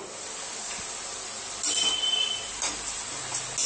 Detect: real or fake real